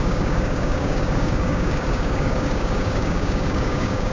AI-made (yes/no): yes